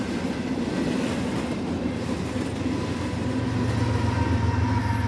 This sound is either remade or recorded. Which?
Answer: recorded